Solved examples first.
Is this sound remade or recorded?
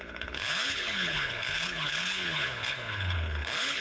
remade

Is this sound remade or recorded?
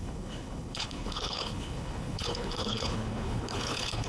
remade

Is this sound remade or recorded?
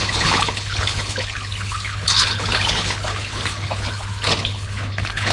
remade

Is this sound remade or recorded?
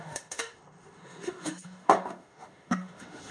remade